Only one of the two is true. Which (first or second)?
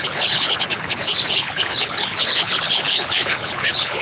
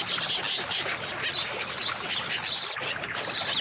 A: second